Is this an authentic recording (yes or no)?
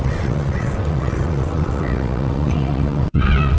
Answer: no